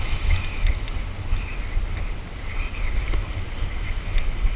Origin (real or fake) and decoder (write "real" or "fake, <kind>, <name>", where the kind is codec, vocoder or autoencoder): real